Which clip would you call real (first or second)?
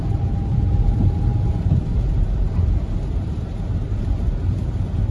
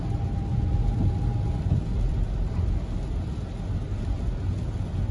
second